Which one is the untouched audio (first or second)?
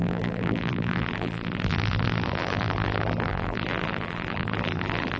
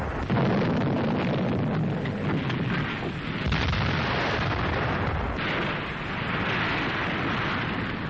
second